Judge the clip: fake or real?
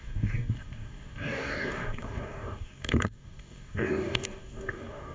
fake